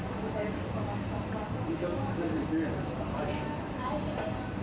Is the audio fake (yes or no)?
no